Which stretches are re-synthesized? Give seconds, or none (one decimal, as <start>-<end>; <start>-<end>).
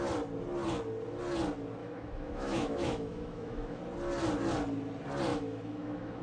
1.8-3.8; 5.3-6.2